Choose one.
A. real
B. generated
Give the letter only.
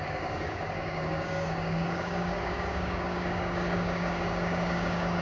B